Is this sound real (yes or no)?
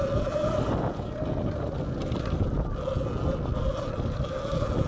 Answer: yes